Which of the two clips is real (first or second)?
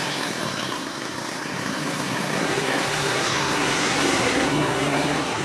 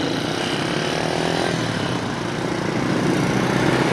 second